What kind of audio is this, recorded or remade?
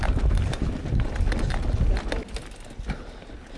recorded